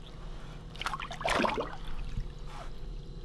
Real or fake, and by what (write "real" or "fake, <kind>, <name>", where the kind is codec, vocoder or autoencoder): real